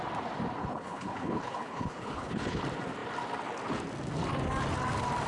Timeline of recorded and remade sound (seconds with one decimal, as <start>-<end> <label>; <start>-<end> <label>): 0.0-0.6 recorded; 0.6-2.6 remade; 2.6-5.3 recorded